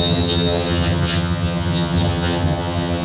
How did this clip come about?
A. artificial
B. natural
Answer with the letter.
A